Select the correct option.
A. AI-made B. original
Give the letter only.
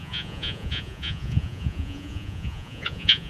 A